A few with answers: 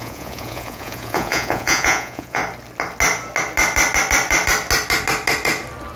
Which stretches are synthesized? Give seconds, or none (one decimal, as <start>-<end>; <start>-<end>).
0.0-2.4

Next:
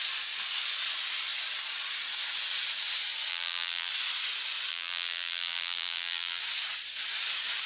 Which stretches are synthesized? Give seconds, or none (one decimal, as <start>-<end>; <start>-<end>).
3.3-3.9; 4.7-6.4

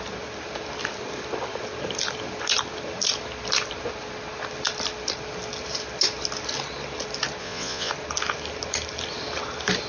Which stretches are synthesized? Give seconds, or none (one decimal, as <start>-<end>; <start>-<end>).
7.4-7.9